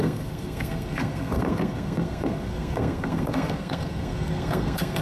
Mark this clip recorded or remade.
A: remade